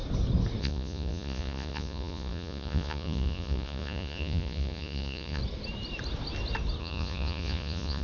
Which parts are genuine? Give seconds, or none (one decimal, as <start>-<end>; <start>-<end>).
0.0-0.6; 5.4-6.8